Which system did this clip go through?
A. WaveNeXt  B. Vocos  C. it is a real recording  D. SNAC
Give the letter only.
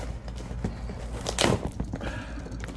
C